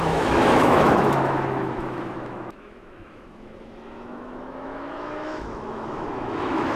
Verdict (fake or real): fake